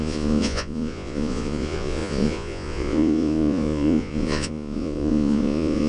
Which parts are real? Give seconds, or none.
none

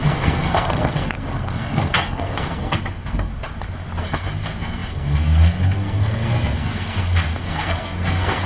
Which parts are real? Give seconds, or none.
3.3-4.0

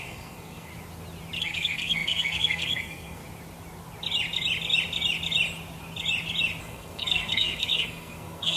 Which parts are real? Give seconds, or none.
0.7-1.4; 3.2-6.6

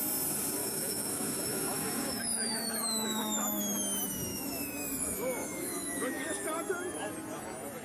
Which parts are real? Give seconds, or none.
0.0-0.6; 3.6-4.3; 6.5-7.8

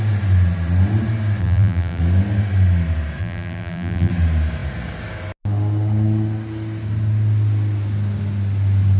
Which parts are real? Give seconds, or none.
0.0-1.4; 2.0-3.2; 4.1-9.0